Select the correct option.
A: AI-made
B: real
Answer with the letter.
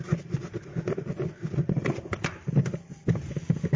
B